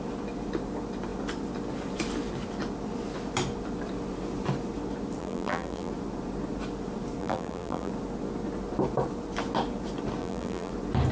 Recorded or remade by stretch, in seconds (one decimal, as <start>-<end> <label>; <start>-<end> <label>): 0.0-5.2 recorded; 5.2-5.9 remade; 5.9-7.2 recorded; 7.2-7.9 remade; 7.9-10.2 recorded; 10.2-10.7 remade; 10.7-11.1 recorded